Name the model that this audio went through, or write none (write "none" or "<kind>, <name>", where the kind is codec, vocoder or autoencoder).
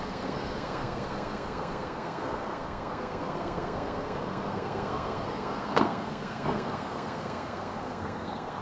codec, SNAC